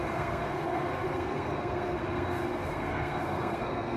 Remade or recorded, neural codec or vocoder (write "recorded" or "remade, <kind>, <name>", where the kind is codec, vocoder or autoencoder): remade, codec, SNAC